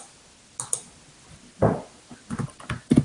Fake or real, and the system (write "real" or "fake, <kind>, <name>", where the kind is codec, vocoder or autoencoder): real